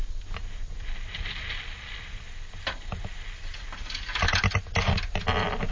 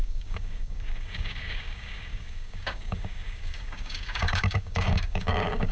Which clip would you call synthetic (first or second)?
second